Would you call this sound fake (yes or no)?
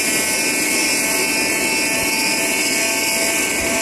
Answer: no